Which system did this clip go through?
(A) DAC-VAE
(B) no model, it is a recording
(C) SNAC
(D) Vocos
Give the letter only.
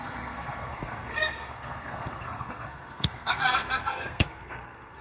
C